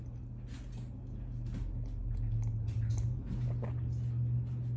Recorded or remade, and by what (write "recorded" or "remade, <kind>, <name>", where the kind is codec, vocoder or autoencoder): recorded